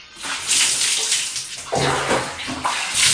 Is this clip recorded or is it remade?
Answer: recorded